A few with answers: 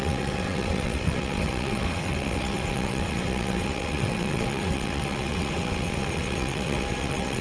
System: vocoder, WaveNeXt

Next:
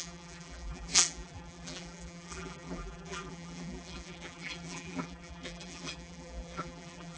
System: vocoder, BigVGAN v2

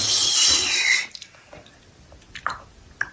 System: none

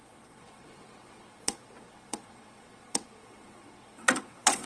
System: vocoder, WaveNeXt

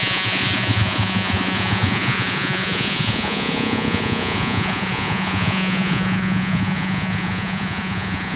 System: vocoder, Vocos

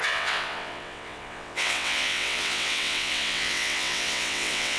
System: vocoder, WaveNeXt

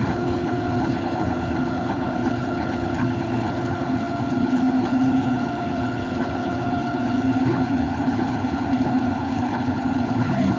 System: codec, HILCodec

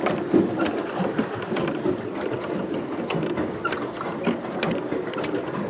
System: none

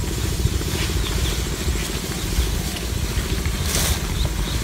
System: none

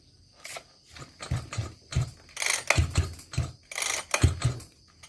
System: none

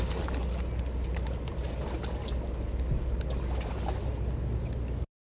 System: none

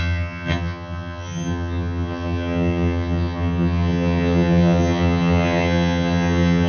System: vocoder, HiFi-GAN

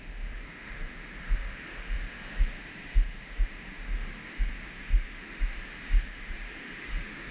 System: autoencoder, DAC-VAE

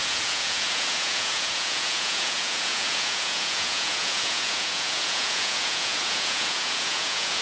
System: vocoder, Vocos